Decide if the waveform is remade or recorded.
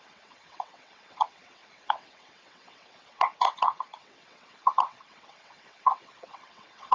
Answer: remade